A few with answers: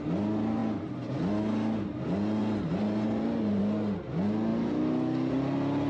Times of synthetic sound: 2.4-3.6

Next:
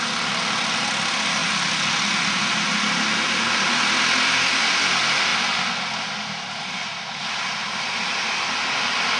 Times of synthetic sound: none